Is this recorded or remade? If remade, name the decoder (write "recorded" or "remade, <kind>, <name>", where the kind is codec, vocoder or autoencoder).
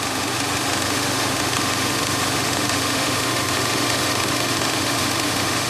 remade, autoencoder, DAC-VAE